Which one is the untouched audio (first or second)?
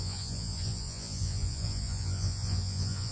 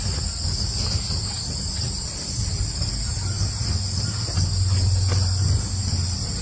second